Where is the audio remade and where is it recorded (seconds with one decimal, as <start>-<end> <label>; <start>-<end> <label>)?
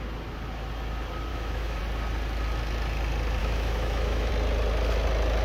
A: 0.0-1.3 recorded; 1.3-1.8 remade; 1.8-3.4 recorded; 3.4-4.3 remade; 4.3-5.4 recorded